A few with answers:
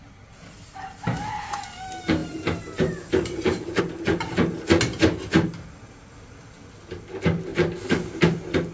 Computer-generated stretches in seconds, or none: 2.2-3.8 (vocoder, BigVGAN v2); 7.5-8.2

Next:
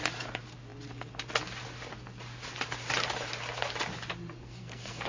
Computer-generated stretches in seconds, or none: 4.4-5.1 (codec, SNAC)

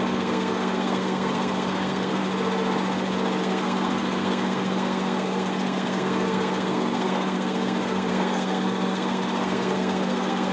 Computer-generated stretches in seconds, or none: 0.0-2.2 (codec, SNAC); 3.4-10.5

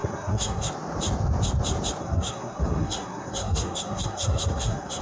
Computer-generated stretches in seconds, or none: 0.0-0.7 (codec, SNAC); 2.0-5.0

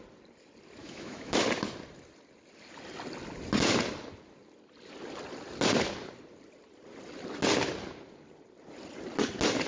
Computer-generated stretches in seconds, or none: 0.8-1.4 (autoencoder, DAC-VAE)

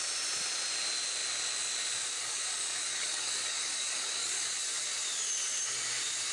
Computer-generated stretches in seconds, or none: 2.2-4.6 (codec, DAC)